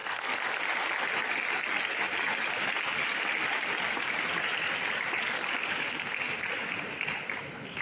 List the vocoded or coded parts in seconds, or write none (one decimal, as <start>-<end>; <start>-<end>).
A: none